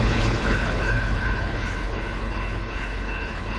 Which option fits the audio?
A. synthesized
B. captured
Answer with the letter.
A